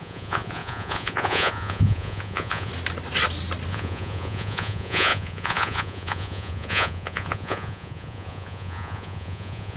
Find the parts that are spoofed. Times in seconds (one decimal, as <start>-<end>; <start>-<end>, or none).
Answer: 0.0-2.7; 3.7-9.8